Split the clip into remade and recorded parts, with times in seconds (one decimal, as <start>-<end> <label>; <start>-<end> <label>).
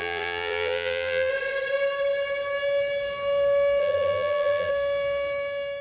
0.0-1.3 remade; 1.3-3.8 recorded; 3.8-4.7 remade; 4.7-5.8 recorded